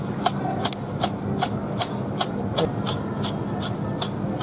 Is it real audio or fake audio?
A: real